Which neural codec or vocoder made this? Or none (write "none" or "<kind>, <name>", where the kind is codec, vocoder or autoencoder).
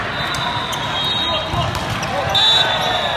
none